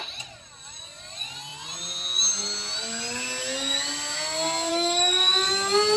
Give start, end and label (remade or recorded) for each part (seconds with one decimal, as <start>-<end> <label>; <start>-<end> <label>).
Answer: 0.0-4.7 recorded; 4.7-5.5 remade; 5.5-6.0 recorded

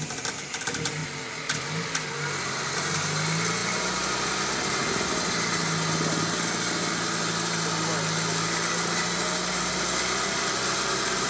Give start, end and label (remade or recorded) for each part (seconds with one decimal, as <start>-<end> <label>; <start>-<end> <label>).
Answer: 0.0-11.3 recorded